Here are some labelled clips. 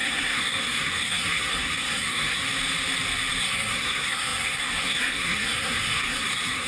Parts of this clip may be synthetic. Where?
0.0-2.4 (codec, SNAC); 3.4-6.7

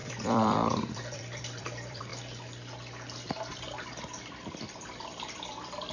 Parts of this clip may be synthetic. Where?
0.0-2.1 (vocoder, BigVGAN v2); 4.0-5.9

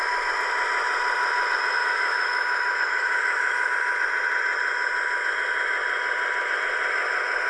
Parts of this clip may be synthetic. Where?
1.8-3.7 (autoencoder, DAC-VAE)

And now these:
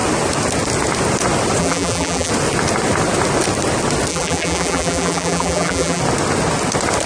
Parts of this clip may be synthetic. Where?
1.6-2.3 (vocoder, BigVGAN v2); 4.1-6.0

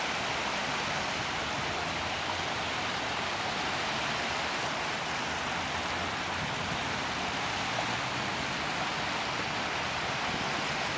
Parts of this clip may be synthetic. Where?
none

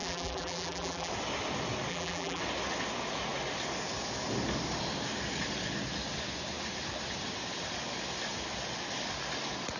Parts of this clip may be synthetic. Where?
0.0-1.1 (vocoder, BigVGAN v2); 1.9-2.4